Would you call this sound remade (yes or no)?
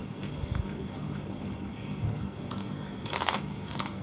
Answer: yes